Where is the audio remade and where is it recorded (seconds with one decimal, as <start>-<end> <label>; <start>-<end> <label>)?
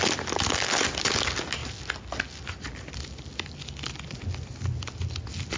0.0-5.6 recorded